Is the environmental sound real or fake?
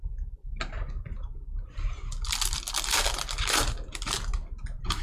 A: real